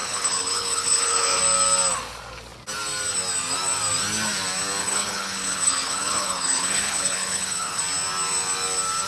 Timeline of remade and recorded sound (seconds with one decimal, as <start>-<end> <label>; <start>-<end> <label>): 0.0-1.4 remade; 1.4-4.8 recorded; 4.8-7.8 remade; 7.8-9.1 recorded